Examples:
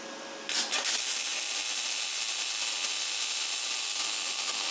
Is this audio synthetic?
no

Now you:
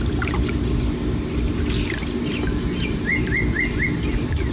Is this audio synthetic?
no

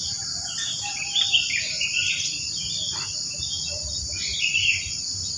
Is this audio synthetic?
no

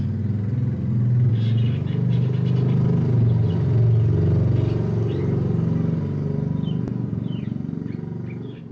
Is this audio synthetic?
no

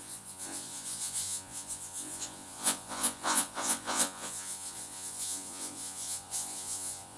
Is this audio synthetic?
yes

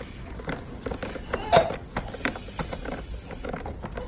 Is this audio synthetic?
no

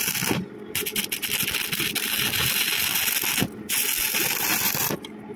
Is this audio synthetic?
no